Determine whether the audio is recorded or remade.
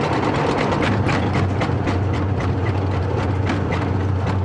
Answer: recorded